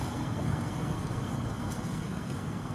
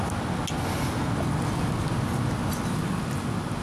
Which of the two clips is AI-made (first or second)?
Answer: first